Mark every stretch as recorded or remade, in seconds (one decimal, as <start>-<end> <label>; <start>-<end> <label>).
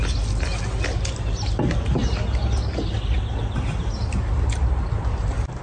0.0-5.6 recorded